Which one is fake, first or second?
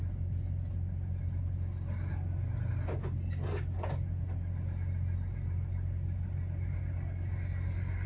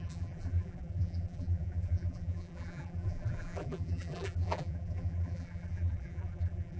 second